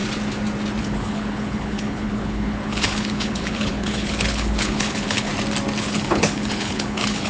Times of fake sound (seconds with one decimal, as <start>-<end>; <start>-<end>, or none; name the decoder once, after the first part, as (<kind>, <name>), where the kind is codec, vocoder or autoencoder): 0.8-5.3 (codec, HILCodec); 5.8-7.3

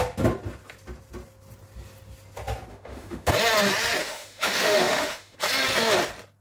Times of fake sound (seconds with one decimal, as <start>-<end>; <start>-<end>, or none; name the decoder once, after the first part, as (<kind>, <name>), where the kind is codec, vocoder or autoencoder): 2.7-3.3 (autoencoder, DAC-VAE); 4.0-5.4

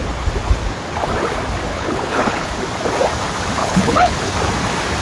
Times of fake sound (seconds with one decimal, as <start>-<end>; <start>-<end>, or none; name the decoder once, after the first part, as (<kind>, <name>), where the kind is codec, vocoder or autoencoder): 1.7-2.5 (codec, HILCodec); 3.6-4.3

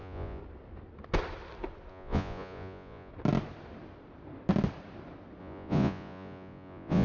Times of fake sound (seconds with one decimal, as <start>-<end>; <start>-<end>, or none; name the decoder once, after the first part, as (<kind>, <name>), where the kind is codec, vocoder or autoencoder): 0.0-0.4 (vocoder, Vocos); 1.9-3.1; 5.4-7.0

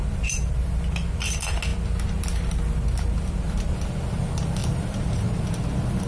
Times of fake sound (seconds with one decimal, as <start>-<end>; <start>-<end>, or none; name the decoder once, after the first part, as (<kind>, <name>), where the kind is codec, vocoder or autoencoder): 4.6-5.4 (vocoder, BigVGAN v2)